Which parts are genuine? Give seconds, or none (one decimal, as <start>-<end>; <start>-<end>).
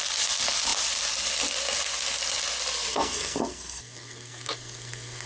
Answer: 0.0-2.9